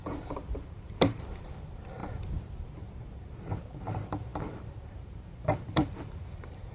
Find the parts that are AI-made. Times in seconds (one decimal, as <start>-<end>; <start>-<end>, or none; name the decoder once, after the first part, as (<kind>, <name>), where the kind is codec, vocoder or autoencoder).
0.0-6.7 (vocoder, BigVGAN v2)

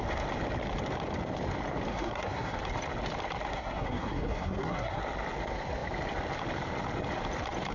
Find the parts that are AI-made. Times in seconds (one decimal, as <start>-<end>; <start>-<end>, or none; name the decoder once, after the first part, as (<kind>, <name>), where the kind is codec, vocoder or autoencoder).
1.9-2.6 (codec, SNAC); 3.5-5.0